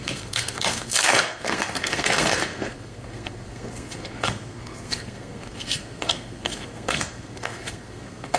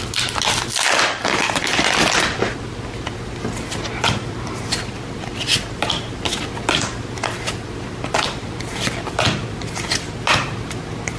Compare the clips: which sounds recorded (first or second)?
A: second